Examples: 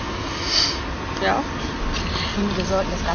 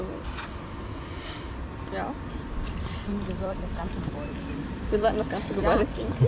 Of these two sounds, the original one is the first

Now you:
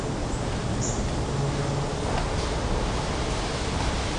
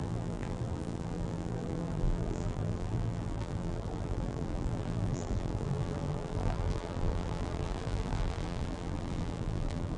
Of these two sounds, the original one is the first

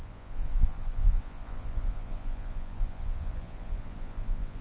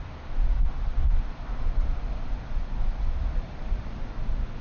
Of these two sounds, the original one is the second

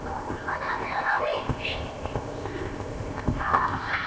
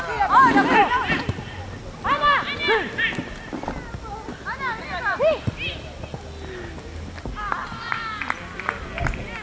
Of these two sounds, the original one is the second